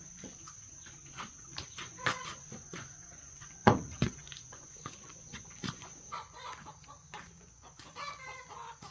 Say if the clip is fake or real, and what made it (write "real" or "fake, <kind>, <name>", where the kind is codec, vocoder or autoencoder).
fake, vocoder, Vocos